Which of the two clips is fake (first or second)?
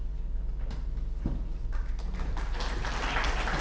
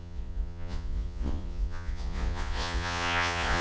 second